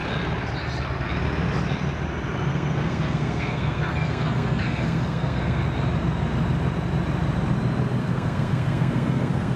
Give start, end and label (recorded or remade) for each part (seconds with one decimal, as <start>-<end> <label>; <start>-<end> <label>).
0.0-2.5 recorded; 2.5-5.6 remade; 5.6-8.0 recorded; 8.0-9.6 remade